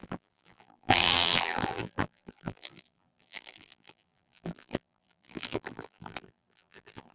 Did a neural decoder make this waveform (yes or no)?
yes